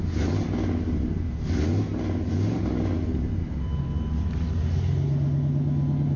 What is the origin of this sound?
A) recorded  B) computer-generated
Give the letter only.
A